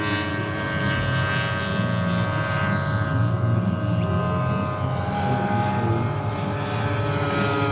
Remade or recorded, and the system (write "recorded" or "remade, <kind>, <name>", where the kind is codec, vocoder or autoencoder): recorded